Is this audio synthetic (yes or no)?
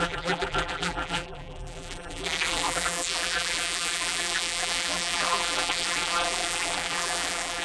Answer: yes